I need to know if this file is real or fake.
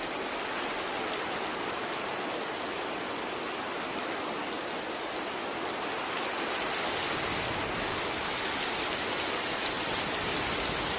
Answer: real